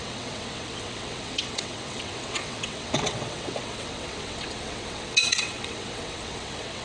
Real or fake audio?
fake